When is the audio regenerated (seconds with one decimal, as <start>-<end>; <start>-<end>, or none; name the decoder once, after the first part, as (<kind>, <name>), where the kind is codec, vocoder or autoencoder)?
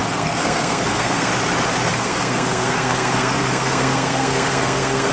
0.0-1.3 (codec, SNAC); 1.9-5.1